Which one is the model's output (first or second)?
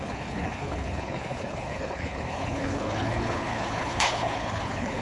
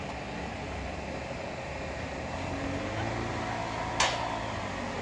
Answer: first